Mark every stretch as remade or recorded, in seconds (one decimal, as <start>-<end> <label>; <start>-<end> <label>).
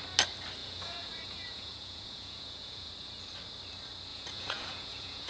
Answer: 0.0-0.6 recorded; 0.6-2.9 remade; 2.9-4.1 recorded; 4.1-5.3 remade